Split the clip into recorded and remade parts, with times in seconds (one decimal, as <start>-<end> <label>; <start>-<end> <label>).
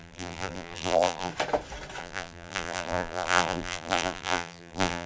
0.0-1.3 remade; 1.3-2.0 recorded; 2.0-5.1 remade